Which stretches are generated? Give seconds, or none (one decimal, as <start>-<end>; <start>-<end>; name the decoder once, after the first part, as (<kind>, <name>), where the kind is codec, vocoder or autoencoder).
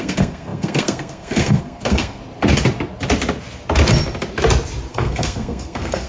0.0-2.2 (codec, SNAC); 4.9-6.1